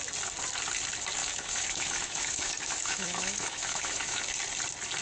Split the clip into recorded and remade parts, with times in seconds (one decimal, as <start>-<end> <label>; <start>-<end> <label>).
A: 0.0-1.2 recorded; 1.2-4.2 remade; 4.2-5.0 recorded